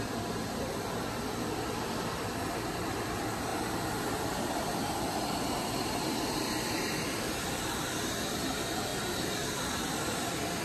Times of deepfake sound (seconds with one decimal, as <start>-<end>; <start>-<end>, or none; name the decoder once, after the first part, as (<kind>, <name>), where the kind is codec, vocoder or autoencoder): 0.0-3.5 (vocoder, BigVGAN v2); 4.2-8.9; 9.5-10.6